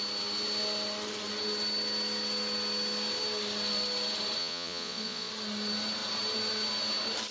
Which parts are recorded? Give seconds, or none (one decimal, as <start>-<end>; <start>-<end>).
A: 0.0-4.4; 5.3-7.3